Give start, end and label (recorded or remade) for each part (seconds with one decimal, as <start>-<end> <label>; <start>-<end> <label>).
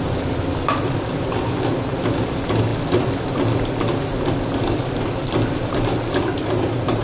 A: 0.0-7.0 recorded